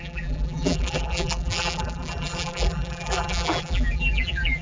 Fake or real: fake